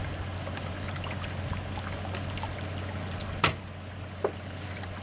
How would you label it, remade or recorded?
recorded